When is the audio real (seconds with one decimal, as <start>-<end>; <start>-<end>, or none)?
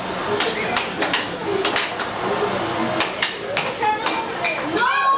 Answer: 0.0-5.2